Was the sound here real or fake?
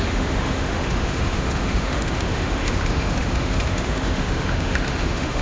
fake